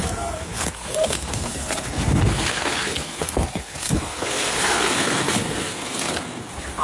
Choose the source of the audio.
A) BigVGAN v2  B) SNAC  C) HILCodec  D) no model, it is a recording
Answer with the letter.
B